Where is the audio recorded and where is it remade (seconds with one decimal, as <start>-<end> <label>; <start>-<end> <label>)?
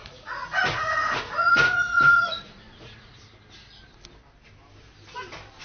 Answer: 0.0-3.2 remade; 3.2-5.6 recorded